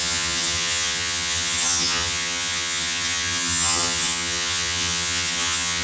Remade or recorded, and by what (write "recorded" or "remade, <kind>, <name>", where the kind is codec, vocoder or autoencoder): remade, vocoder, HiFi-GAN